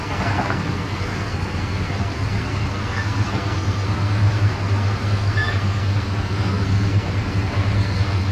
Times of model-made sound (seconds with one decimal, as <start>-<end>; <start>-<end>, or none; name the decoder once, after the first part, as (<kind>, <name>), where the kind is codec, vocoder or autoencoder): 0.0-8.3 (codec, SNAC)